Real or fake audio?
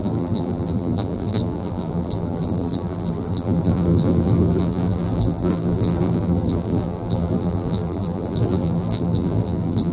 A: fake